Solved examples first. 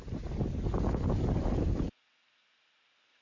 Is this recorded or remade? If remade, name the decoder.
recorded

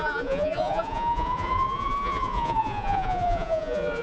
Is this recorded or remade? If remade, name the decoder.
remade, vocoder, Vocos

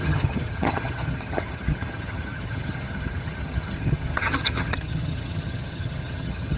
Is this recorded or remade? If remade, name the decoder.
remade, vocoder, HiFi-GAN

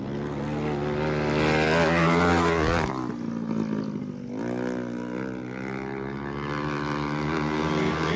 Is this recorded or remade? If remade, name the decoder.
recorded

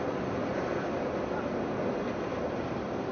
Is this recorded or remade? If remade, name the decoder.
recorded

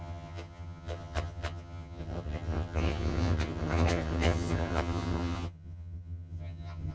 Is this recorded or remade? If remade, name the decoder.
remade, vocoder, HiFi-GAN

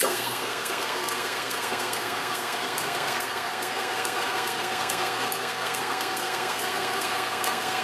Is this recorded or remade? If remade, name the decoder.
remade, codec, SNAC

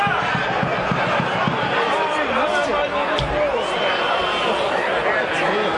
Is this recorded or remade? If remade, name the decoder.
recorded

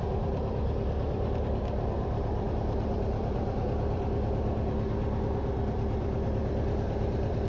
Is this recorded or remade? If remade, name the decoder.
remade, vocoder, BigVGAN v2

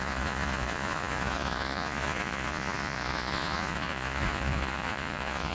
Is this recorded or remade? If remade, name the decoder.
remade, vocoder, Vocos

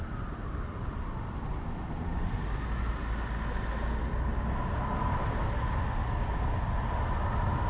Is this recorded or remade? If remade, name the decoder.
recorded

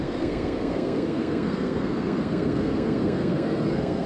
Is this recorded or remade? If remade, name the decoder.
remade, codec, SNAC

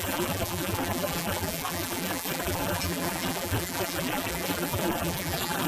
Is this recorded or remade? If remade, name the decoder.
remade, vocoder, BigVGAN v2